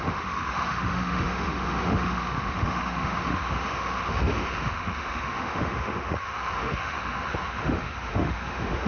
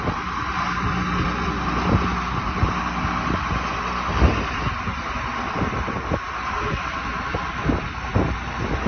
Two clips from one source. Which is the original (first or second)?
second